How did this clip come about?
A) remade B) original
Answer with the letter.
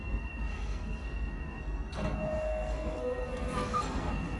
A